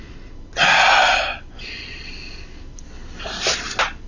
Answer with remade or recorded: recorded